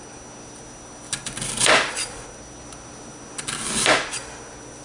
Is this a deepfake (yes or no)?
no